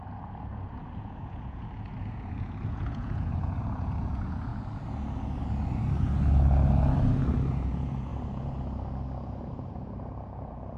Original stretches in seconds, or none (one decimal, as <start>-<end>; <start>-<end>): 4.5-7.5; 8.1-9.7

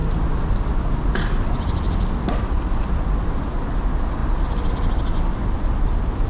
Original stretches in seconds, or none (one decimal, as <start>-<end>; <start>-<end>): 0.0-6.3

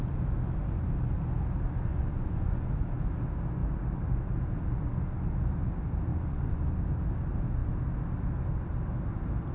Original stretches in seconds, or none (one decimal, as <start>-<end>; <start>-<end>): 0.0-1.9; 2.7-6.1; 6.7-9.5

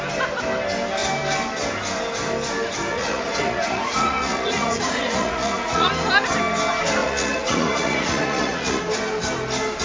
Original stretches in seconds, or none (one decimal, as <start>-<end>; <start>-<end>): 0.0-2.9; 5.9-7.0; 8.8-9.8

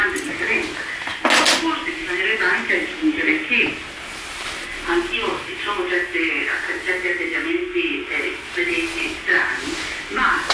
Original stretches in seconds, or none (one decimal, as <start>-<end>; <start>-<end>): 0.0-10.5

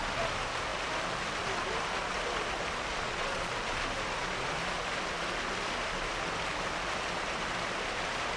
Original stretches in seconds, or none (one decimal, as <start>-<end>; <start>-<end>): 0.0-2.9; 3.5-8.4

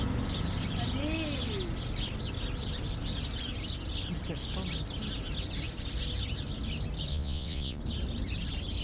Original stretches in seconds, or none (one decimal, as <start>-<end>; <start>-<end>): 0.0-7.1; 7.8-8.8

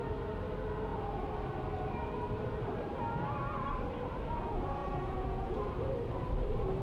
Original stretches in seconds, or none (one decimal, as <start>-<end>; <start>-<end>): 0.0-4.8; 5.6-6.8